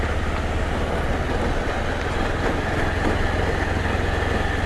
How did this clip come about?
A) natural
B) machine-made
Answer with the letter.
A